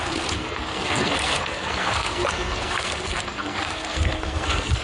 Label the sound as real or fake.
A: fake